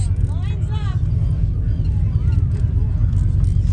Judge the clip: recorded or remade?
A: recorded